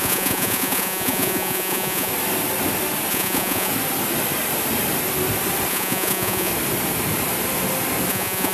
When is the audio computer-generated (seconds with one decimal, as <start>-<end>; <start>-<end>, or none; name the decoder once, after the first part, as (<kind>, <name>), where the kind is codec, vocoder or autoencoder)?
0.0-2.1 (vocoder, Vocos); 3.1-3.7; 5.7-6.5; 8.1-8.5